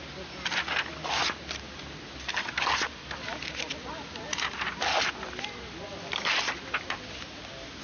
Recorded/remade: recorded